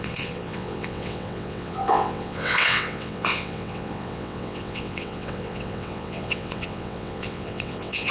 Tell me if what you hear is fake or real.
fake